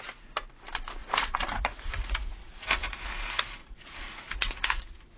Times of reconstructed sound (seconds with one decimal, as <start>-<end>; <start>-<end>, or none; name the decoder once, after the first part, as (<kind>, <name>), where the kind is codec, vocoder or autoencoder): 1.0-3.1 (vocoder, Vocos); 3.6-5.2